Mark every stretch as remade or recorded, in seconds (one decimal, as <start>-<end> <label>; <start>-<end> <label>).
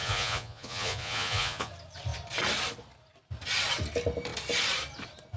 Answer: 0.0-1.7 remade; 1.7-5.4 recorded